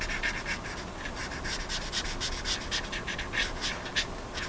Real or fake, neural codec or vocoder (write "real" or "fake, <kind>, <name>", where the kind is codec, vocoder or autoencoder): real